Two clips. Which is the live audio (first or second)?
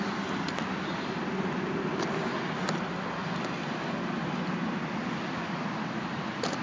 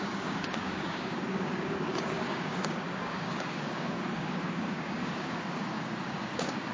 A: first